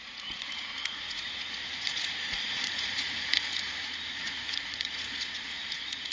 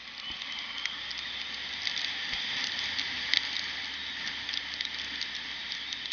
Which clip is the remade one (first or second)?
first